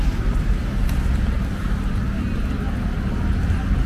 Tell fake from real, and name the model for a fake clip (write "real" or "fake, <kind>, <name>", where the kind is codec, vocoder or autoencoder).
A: real